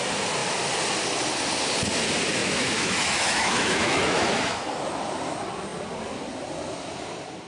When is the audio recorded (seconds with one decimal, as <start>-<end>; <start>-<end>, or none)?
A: 0.0-2.4; 4.6-7.5